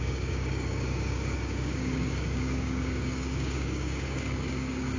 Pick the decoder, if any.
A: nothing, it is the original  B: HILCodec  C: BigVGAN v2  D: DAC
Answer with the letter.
D